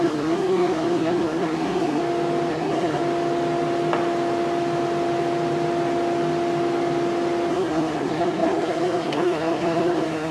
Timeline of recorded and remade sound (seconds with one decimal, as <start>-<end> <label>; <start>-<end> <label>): 0.0-2.0 remade; 2.0-2.5 recorded; 2.5-3.0 remade; 3.0-7.5 recorded; 7.5-10.3 remade